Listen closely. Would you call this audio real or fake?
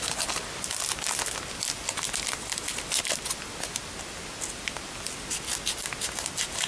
real